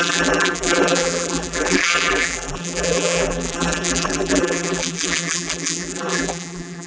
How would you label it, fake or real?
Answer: fake